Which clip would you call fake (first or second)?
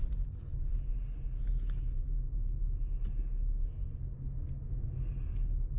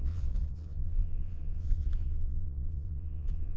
second